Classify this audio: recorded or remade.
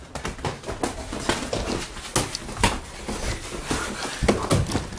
recorded